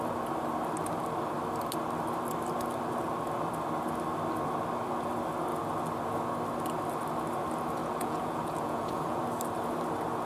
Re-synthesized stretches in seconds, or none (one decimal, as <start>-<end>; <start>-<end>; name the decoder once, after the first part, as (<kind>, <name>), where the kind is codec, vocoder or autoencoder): 7.8-9.2 (vocoder, Vocos)